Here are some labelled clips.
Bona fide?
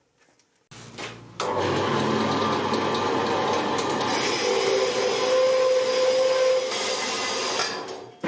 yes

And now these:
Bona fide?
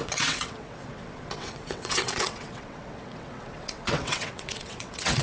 no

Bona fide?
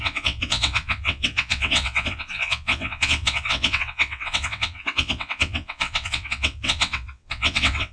no